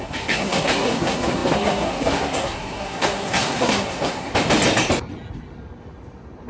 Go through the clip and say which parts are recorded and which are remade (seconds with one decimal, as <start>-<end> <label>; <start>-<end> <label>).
0.0-4.3 remade; 4.3-6.5 recorded